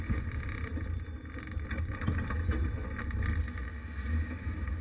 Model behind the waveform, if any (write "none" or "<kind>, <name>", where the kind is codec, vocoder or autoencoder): none